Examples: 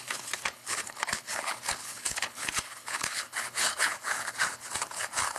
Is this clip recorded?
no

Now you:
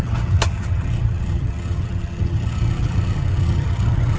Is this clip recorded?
no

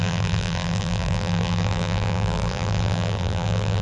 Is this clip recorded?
no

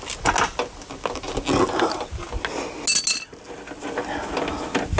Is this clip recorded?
yes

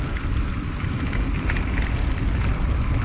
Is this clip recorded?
yes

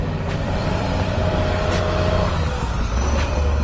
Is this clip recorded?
no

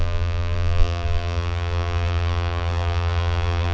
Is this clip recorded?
no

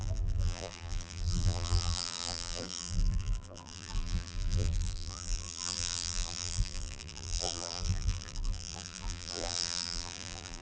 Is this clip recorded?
no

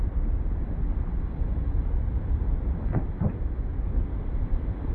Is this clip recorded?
no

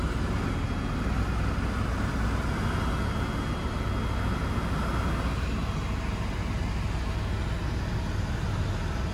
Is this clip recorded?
yes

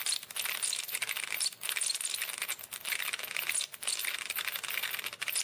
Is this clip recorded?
yes